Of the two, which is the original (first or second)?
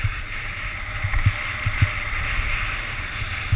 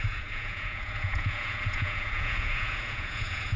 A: first